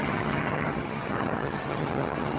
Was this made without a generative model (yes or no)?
no